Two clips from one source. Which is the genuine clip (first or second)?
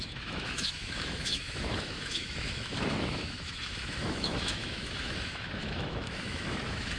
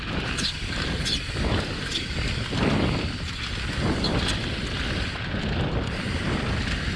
second